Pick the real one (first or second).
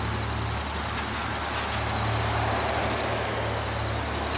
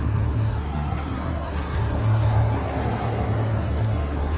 first